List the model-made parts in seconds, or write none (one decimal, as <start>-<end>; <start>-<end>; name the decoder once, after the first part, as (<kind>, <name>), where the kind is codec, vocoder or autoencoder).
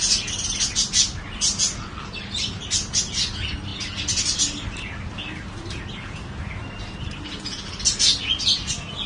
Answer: none